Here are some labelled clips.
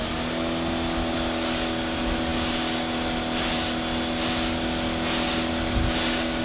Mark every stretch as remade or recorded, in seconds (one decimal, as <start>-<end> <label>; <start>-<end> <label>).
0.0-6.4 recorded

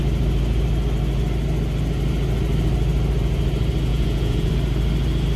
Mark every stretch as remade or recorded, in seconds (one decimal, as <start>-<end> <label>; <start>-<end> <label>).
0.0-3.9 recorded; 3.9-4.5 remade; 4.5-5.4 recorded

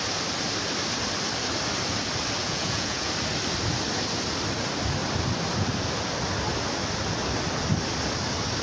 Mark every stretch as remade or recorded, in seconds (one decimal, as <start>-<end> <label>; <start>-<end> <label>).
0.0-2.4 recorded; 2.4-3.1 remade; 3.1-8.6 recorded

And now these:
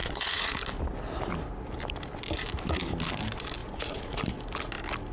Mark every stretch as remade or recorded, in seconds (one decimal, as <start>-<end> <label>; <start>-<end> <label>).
0.0-0.6 remade; 0.6-3.6 recorded; 3.6-4.2 remade; 4.2-5.1 recorded